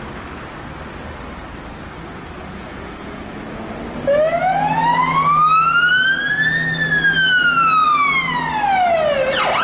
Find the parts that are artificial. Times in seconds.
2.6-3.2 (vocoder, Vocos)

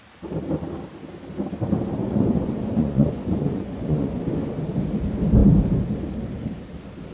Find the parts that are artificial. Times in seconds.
2.0-4.2 (vocoder, Vocos)

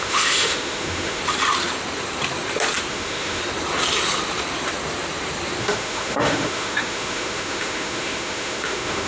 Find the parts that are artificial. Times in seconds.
0.0-1.2 (autoencoder, DAC-VAE); 2.9-3.4; 5.6-9.1